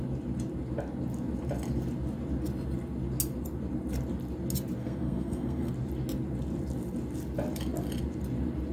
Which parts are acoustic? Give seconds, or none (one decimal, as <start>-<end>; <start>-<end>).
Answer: 0.0-4.8; 5.7-8.7